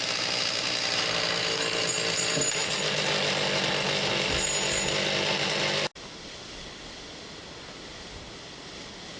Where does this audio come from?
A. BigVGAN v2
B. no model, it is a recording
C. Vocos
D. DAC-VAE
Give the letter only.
B